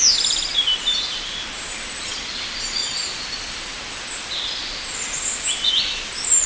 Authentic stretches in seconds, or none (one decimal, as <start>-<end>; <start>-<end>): 0.0-6.5